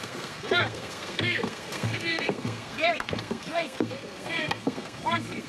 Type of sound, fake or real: fake